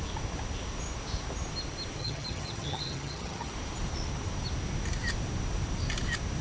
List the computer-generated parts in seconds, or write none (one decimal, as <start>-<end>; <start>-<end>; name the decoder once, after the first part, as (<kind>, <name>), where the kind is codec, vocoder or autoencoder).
2.0-3.5 (vocoder, HiFi-GAN)